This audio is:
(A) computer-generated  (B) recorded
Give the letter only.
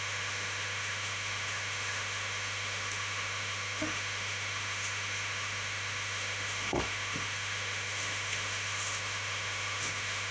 A